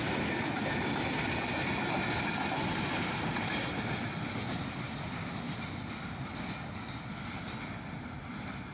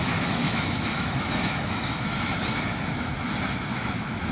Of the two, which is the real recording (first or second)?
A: first